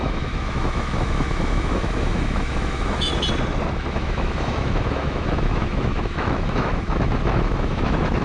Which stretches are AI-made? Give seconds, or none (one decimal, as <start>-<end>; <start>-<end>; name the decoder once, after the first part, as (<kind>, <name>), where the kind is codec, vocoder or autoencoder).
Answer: 0.0-3.1 (autoencoder, DAC-VAE); 3.9-8.2